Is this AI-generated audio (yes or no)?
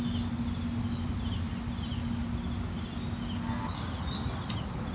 no